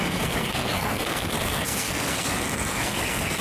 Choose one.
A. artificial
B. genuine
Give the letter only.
A